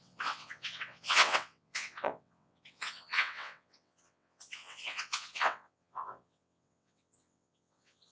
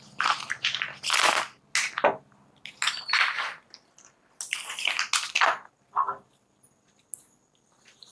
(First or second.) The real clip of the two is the second